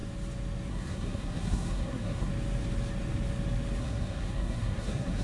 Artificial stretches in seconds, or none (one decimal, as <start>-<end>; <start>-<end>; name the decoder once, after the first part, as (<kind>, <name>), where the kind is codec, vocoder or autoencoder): 0.7-2.3 (codec, SNAC); 3.8-5.2